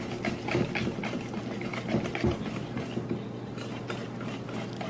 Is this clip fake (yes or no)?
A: no